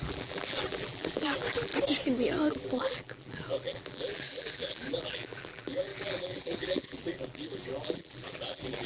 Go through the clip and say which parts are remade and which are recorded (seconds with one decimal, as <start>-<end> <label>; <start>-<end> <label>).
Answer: 0.0-1.7 remade; 1.7-2.5 recorded; 2.5-8.9 remade